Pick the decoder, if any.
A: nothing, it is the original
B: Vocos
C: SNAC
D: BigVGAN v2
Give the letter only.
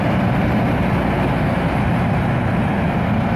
D